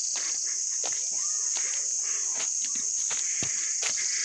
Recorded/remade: recorded